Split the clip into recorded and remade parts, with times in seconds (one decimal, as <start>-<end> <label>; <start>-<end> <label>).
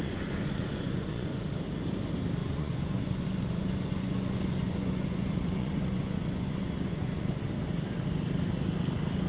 0.0-1.5 remade; 1.5-2.4 recorded; 2.4-7.5 remade; 7.5-9.3 recorded